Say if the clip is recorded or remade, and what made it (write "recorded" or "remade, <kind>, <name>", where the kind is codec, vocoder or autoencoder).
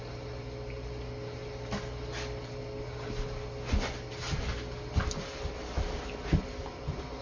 recorded